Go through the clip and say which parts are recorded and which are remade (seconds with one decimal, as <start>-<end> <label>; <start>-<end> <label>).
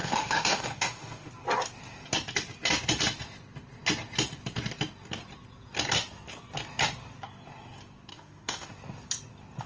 0.0-1.3 remade; 1.3-8.1 recorded; 8.1-8.7 remade; 8.7-9.7 recorded